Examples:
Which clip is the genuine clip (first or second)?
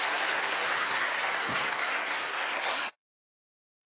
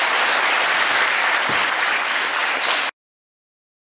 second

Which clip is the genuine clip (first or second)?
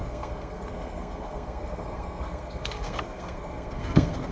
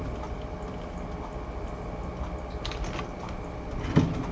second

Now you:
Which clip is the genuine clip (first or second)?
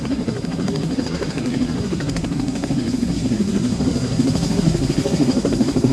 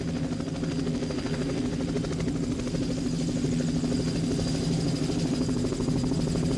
second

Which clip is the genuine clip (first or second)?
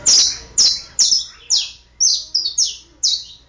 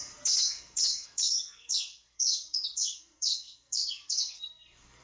first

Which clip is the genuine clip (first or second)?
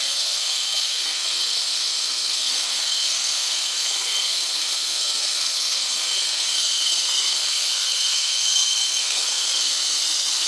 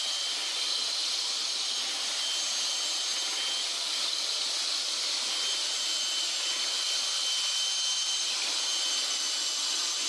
second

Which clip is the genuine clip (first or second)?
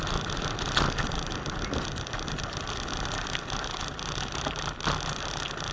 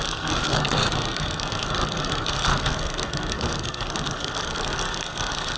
first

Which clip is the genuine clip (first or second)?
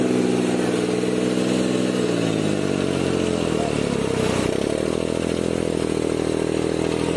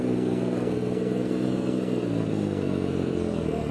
first